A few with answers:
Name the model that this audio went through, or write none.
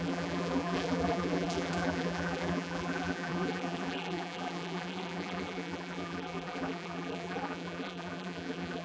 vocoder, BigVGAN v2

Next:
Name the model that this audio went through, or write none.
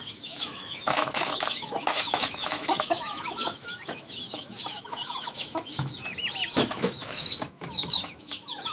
autoencoder, DAC-VAE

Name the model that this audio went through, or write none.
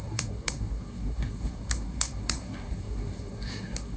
codec, SNAC